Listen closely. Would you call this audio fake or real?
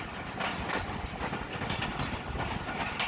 real